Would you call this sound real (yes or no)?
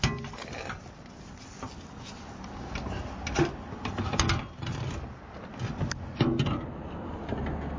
yes